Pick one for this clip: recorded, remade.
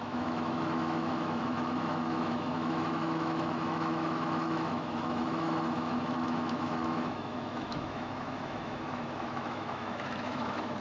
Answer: remade